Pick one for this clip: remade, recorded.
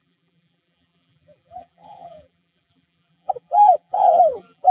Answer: remade